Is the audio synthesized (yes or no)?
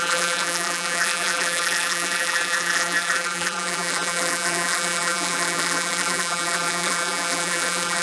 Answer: yes